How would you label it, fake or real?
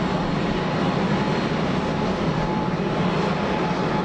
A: real